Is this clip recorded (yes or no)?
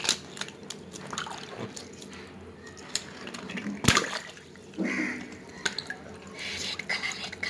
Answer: yes